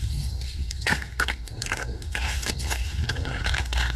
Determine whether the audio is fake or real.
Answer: fake